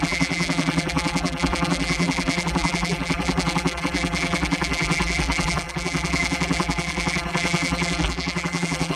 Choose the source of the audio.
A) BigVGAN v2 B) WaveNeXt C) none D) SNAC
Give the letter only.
A